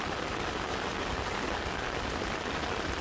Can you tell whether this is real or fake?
real